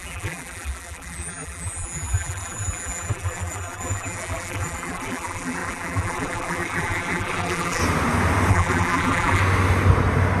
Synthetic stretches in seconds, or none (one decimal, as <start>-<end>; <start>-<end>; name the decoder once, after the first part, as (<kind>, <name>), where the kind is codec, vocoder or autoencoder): 0.0-7.8 (vocoder, BigVGAN v2); 8.5-9.4